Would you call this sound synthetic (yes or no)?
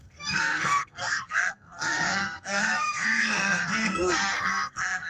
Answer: yes